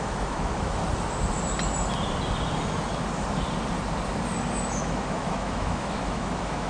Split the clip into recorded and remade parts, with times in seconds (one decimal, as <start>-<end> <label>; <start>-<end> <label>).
0.0-0.8 remade; 0.8-4.8 recorded; 4.8-6.7 remade